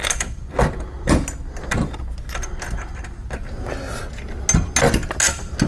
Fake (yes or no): no